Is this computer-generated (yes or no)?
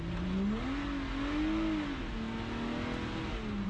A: no